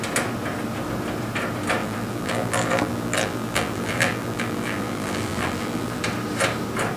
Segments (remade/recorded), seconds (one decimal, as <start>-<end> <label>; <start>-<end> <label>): 0.0-1.8 recorded; 1.8-6.0 remade; 6.0-7.0 recorded